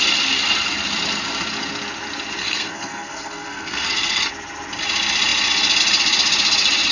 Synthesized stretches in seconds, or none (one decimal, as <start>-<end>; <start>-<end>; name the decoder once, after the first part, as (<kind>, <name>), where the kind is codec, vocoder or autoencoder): 2.4-4.3 (codec, SNAC)